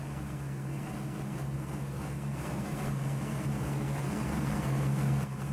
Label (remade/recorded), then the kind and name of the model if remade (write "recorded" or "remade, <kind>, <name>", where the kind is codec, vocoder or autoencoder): remade, codec, SNAC